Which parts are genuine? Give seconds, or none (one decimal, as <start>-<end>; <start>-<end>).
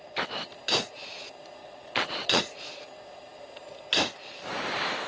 0.0-1.6; 2.4-5.1